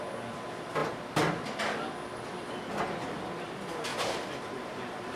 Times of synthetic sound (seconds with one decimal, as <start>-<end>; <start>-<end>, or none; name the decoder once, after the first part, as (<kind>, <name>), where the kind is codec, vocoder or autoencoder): 3.9-5.2 (vocoder, BigVGAN v2)

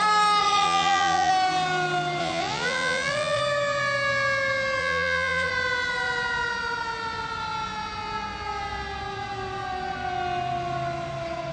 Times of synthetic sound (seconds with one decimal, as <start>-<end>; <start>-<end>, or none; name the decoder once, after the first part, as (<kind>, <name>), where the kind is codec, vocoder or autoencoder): 0.4-1.3 (vocoder, Vocos); 2.2-3.4; 4.8-5.5

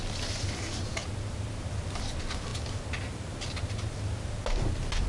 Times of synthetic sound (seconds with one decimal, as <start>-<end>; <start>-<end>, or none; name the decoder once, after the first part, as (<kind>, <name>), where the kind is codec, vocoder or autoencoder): none